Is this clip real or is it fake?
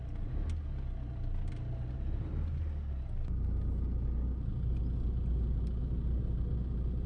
real